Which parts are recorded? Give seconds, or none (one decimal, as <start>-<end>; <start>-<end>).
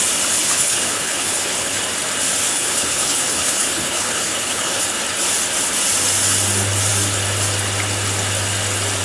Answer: 0.0-0.4; 1.8-2.5; 4.8-9.0